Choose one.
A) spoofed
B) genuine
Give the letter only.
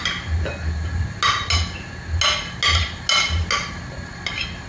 B